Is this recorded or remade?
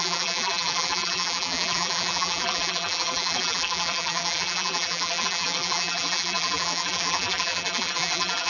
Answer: remade